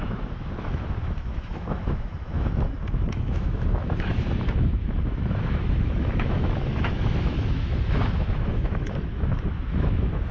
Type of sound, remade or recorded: remade